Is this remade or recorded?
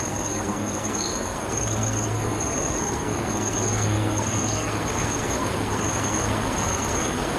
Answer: remade